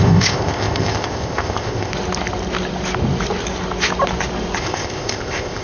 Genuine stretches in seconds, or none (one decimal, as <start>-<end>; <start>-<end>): 1.9-4.6